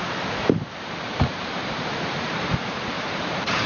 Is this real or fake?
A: fake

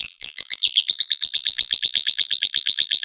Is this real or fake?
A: fake